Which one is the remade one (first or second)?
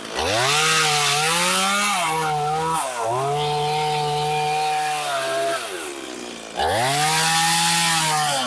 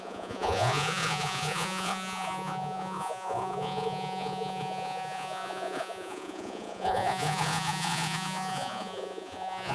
second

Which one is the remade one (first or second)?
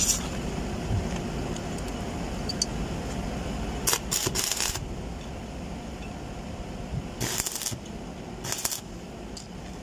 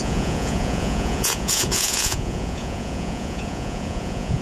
second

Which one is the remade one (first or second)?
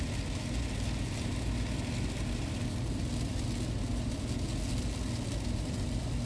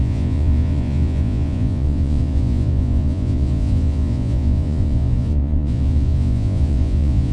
second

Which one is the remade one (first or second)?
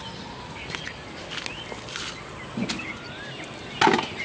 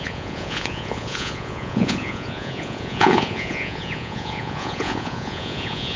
second